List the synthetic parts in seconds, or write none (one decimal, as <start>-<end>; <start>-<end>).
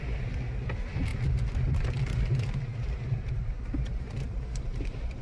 none